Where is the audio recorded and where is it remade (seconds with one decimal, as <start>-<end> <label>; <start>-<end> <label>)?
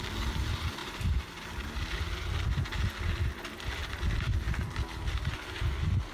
0.0-6.1 recorded